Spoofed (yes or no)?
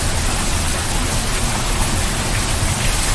no